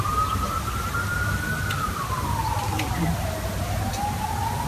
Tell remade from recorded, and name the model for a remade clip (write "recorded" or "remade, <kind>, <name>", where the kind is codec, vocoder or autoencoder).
recorded